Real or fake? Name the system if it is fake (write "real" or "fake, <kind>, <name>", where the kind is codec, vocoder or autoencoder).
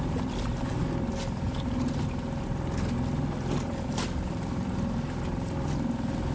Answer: real